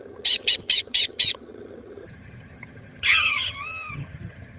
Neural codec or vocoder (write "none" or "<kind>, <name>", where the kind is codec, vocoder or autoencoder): vocoder, HiFi-GAN